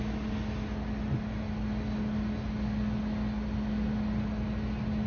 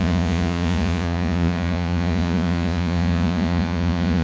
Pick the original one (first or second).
first